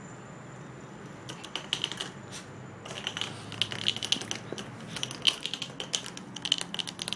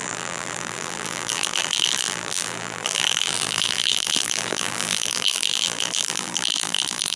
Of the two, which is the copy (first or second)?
second